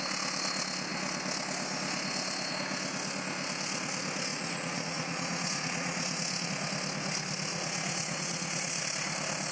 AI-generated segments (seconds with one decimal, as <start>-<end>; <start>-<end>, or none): 4.3-6.5; 7.5-8.8